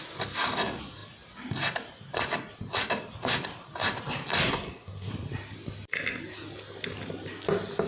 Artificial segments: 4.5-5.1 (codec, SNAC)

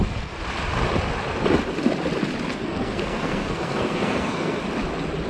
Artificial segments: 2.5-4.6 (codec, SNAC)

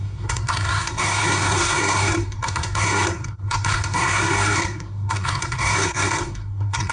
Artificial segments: 0.0-6.9 (codec, SNAC)

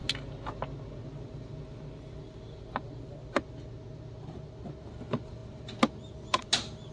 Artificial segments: none

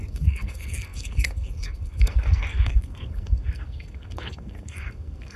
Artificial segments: 0.0-5.4 (codec, SNAC)

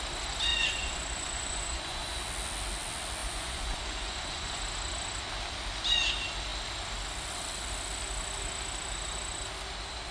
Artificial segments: 0.5-2.2 (vocoder, Vocos); 3.2-4.6

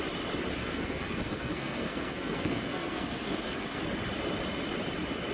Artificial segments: 0.6-3.8 (codec, SNAC)